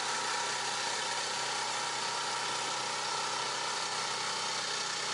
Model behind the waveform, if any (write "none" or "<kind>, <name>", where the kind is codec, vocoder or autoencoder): none